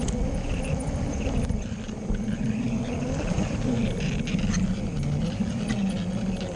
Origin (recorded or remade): recorded